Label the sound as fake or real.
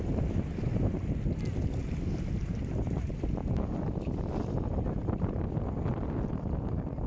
real